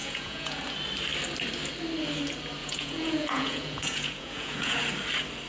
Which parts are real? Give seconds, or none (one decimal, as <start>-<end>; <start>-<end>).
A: 0.6-2.6; 4.8-5.5